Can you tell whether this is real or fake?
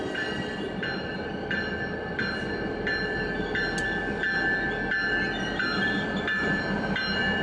real